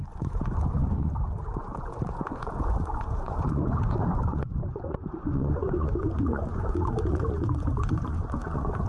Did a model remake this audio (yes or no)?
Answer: yes